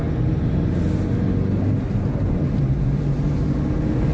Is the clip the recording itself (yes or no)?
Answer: yes